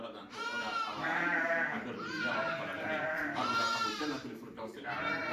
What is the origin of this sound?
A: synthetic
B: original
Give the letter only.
A